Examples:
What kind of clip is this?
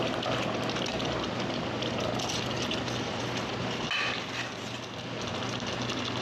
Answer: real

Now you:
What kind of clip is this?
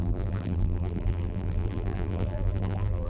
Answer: fake